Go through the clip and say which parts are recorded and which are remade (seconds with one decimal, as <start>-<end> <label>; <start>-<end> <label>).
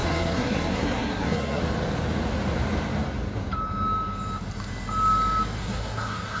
0.0-1.6 remade; 1.6-5.6 recorded; 5.6-6.4 remade